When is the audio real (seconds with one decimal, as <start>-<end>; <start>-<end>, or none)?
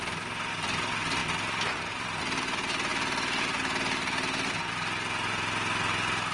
0.0-6.3